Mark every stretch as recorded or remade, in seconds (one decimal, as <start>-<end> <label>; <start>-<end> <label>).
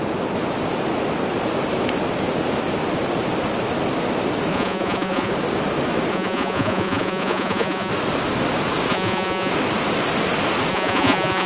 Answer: 0.0-4.5 recorded; 4.5-5.3 remade; 5.3-6.1 recorded; 6.1-7.9 remade; 7.9-8.9 recorded; 8.9-9.5 remade; 9.5-10.7 recorded; 10.7-11.5 remade